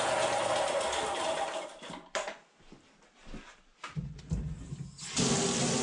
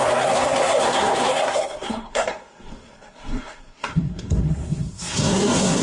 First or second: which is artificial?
second